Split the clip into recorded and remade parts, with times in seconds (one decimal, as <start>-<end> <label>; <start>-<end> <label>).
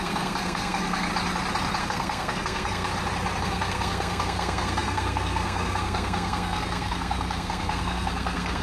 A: 0.0-1.1 remade; 1.1-1.8 recorded; 1.8-2.9 remade; 2.9-3.4 recorded; 3.4-8.6 remade